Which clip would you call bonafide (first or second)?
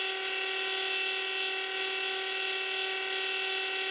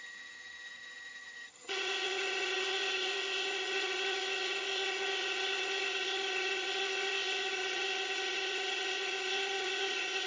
first